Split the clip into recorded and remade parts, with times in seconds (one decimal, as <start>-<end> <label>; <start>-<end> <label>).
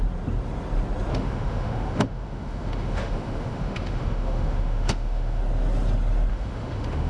0.0-1.1 recorded; 1.1-5.4 remade; 5.4-6.3 recorded; 6.3-7.1 remade